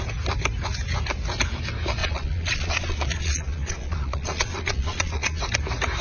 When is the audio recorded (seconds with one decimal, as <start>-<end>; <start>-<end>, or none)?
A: 0.0-2.0; 5.4-6.0